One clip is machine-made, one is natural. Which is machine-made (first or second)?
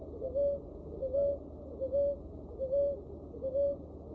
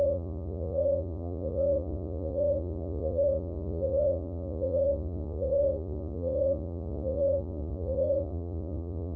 second